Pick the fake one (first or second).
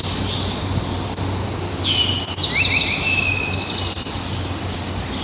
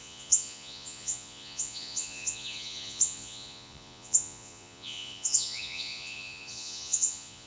second